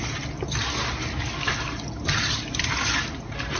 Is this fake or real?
real